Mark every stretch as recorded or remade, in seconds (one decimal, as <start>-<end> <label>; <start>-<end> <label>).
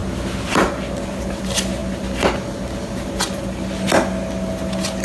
0.0-5.0 recorded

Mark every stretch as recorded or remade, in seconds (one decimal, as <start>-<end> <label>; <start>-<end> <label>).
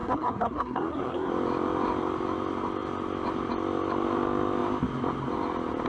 0.0-1.3 remade; 1.3-5.9 recorded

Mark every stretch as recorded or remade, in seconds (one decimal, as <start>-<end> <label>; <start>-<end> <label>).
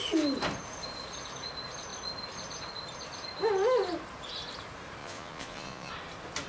0.0-5.0 recorded; 5.0-5.9 remade; 5.9-6.5 recorded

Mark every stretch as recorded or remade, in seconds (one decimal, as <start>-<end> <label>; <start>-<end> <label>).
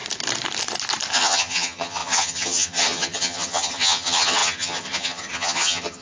0.0-1.1 recorded; 1.1-6.0 remade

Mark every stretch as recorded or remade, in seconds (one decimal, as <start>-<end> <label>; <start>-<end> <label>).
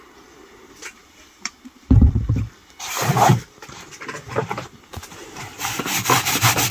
0.0-1.0 recorded; 1.0-2.1 remade; 2.1-2.6 recorded; 2.6-3.9 remade; 3.9-4.4 recorded; 4.4-5.8 remade; 5.8-6.7 recorded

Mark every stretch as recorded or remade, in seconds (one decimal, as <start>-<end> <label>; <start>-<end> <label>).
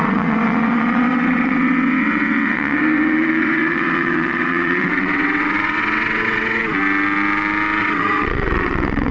0.0-6.6 remade; 6.6-7.8 recorded; 7.8-9.1 remade